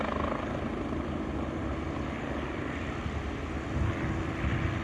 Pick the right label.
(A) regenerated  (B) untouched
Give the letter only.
B